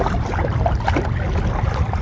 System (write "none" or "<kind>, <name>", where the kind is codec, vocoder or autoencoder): none